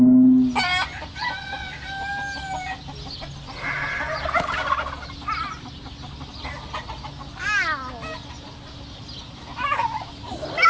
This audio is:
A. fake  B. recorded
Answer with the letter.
B